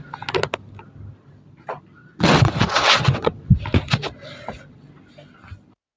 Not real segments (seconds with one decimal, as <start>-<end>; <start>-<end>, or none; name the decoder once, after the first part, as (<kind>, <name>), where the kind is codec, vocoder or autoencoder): 2.0-3.6 (vocoder, WaveNeXt)